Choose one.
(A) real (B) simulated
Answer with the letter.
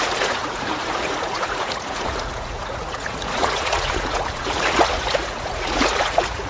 B